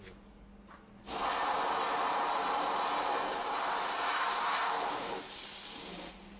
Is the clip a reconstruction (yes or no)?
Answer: no